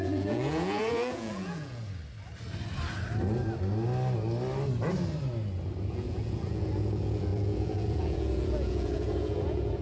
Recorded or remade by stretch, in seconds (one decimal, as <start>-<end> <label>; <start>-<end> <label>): 0.0-1.8 remade; 1.8-5.9 recorded; 5.9-9.8 remade